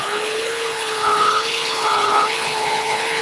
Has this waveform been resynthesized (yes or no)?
yes